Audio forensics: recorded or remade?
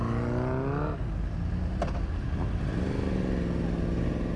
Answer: recorded